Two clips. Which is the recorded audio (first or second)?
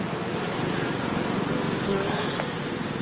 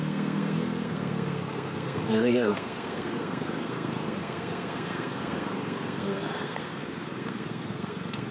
first